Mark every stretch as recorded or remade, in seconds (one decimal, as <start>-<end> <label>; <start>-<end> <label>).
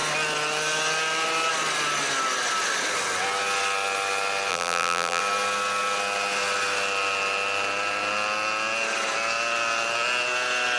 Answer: 0.0-4.5 recorded; 4.5-5.2 remade; 5.2-10.8 recorded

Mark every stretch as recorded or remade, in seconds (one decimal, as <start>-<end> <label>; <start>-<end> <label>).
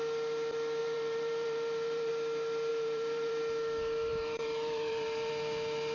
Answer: 0.0-0.8 recorded; 0.8-2.1 remade; 2.1-2.7 recorded; 2.7-3.3 remade; 3.3-4.1 recorded; 4.1-5.3 remade; 5.3-5.9 recorded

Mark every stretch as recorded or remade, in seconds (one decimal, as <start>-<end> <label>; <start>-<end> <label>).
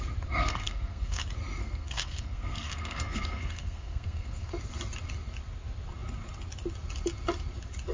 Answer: 0.0-0.4 recorded; 0.4-1.2 remade; 1.2-1.6 recorded; 1.6-4.5 remade; 4.5-7.9 recorded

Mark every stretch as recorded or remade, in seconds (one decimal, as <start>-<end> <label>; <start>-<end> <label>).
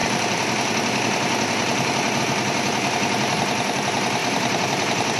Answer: 0.0-4.2 recorded; 4.2-5.2 remade